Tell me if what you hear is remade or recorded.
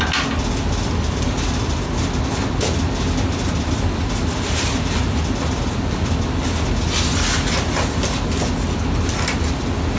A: recorded